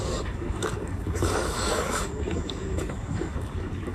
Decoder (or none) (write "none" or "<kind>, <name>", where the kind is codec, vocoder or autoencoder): codec, DAC